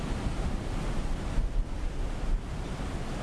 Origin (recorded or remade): recorded